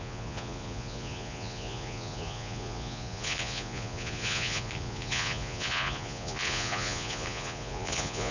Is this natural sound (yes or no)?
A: no